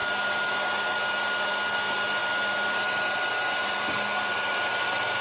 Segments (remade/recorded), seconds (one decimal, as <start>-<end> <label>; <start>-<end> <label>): 0.0-5.2 recorded